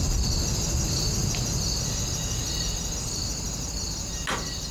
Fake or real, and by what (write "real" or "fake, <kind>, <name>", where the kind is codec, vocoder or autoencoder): real